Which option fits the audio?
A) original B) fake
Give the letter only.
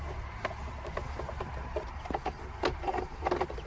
A